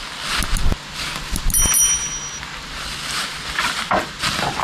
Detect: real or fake real